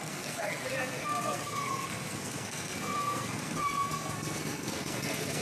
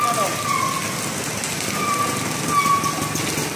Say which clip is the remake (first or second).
first